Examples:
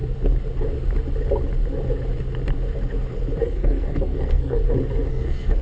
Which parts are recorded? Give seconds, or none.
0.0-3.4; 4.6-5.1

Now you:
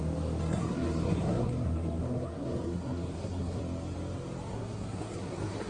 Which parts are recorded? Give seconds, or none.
0.0-0.4; 3.6-4.5

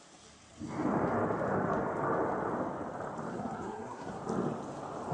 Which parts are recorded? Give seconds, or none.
0.0-3.3; 4.2-5.1

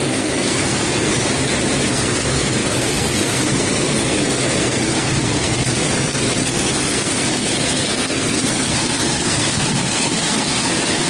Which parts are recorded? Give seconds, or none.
1.1-1.9

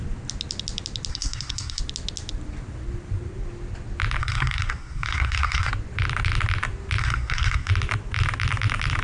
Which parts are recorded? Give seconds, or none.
0.0-1.1; 1.8-4.2; 5.7-7.0; 7.7-9.0